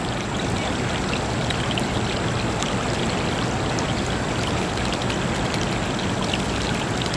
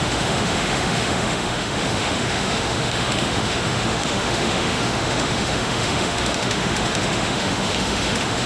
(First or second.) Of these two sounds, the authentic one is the first